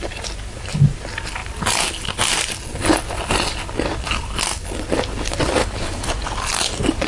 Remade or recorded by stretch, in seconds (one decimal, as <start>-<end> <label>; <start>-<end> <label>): 0.0-5.6 recorded; 5.6-6.1 remade; 6.1-7.1 recorded